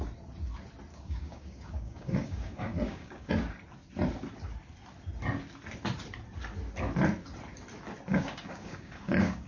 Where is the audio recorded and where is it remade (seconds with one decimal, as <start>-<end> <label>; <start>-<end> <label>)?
0.0-0.9 recorded; 0.9-3.3 remade; 3.3-8.1 recorded; 8.1-9.5 remade